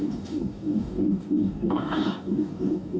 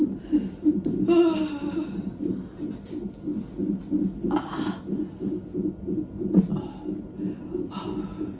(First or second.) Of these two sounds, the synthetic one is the first